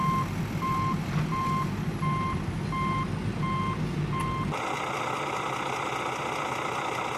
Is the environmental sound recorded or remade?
recorded